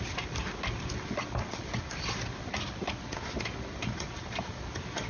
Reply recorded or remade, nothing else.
recorded